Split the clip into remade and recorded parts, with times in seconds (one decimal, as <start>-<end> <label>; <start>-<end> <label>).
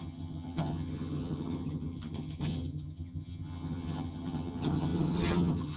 0.0-5.8 remade